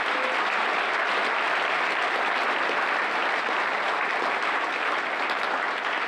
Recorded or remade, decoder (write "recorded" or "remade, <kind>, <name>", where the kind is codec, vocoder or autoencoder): recorded